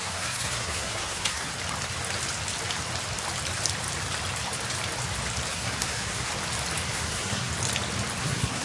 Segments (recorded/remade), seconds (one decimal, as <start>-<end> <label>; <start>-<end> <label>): 0.0-1.5 remade; 1.5-5.5 recorded; 5.5-6.3 remade; 6.3-6.9 recorded; 6.9-7.5 remade; 7.5-8.2 recorded; 8.2-8.6 remade